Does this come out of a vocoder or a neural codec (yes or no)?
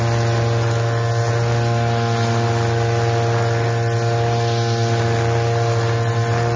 no